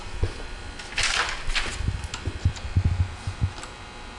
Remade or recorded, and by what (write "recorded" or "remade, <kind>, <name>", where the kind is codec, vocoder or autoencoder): recorded